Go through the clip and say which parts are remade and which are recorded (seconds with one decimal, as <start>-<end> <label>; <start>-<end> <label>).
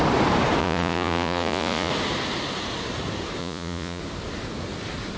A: 0.0-0.6 recorded; 0.6-1.9 remade; 1.9-3.4 recorded; 3.4-4.0 remade; 4.0-5.2 recorded